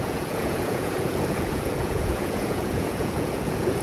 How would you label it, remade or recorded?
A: remade